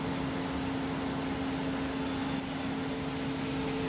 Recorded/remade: recorded